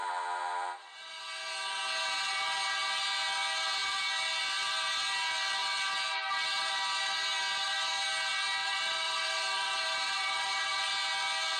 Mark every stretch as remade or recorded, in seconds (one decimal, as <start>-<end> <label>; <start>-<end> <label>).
0.0-1.1 remade; 1.1-8.6 recorded; 8.6-10.9 remade; 10.9-11.6 recorded